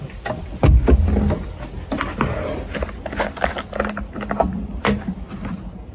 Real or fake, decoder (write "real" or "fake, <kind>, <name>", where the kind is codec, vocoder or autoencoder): real